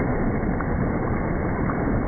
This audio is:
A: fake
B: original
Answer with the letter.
B